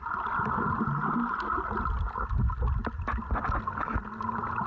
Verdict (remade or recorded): recorded